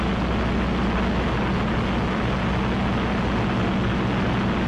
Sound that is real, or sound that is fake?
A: real